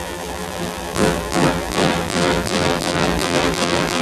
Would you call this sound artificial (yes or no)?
yes